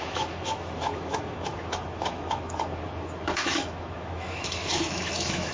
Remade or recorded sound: remade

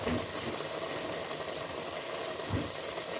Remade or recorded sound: recorded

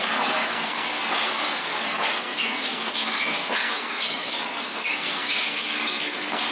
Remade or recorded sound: remade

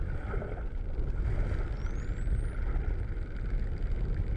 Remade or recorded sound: recorded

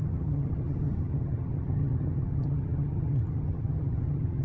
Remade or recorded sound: remade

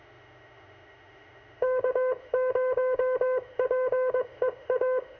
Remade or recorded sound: remade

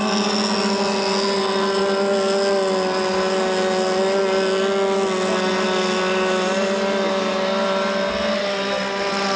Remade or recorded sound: recorded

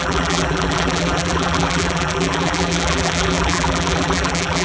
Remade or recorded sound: remade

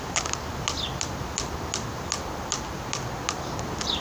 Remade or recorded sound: recorded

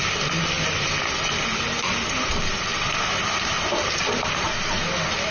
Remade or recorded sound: recorded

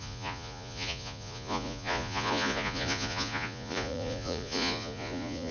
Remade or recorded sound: remade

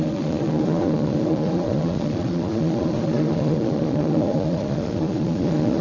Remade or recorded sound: remade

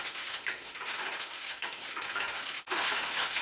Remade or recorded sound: remade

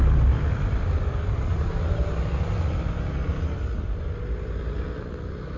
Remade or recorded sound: recorded